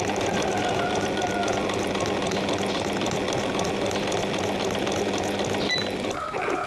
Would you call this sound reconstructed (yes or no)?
no